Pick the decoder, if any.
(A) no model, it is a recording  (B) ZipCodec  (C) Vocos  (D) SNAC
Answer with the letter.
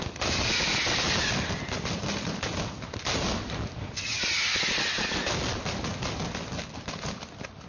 A